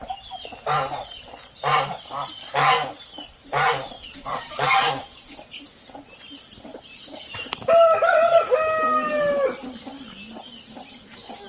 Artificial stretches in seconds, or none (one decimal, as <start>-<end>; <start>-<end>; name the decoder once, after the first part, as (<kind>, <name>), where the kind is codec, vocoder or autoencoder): 4.0-5.4 (vocoder, Vocos)

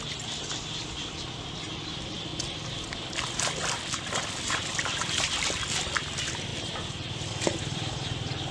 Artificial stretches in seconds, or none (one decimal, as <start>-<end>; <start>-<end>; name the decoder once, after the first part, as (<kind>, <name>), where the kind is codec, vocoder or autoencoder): 0.0-2.3 (vocoder, BigVGAN v2); 4.2-8.5

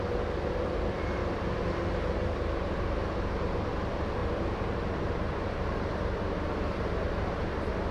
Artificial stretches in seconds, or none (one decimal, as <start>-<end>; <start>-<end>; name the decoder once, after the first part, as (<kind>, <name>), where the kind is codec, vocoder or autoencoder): 1.2-3.5 (vocoder, BigVGAN v2); 4.2-7.1

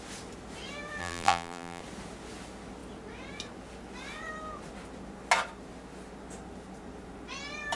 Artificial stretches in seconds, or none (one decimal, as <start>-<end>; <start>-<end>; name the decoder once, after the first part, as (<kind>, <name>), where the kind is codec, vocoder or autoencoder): 1.0-1.8 (vocoder, BigVGAN v2)

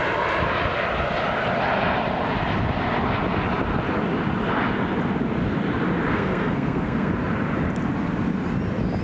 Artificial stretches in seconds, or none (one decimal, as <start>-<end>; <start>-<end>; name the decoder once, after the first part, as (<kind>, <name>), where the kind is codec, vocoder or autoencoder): 6.1-7.1 (codec, SNAC)